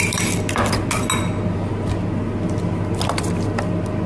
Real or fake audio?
real